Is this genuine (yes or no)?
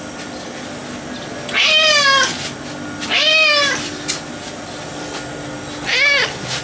yes